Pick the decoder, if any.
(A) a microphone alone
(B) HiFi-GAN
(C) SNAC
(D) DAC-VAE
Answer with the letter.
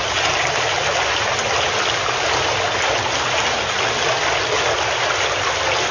A